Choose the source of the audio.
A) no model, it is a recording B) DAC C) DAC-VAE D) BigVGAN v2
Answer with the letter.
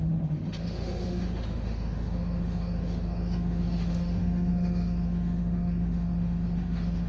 C